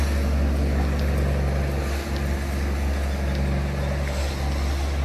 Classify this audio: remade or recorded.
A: recorded